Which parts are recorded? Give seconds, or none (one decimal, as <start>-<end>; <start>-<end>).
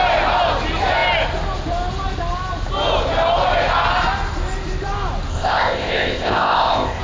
0.0-5.3